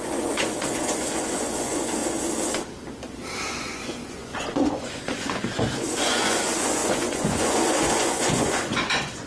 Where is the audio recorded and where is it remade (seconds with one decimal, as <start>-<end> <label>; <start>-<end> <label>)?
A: 0.0-2.0 remade; 2.0-3.5 recorded; 3.5-9.3 remade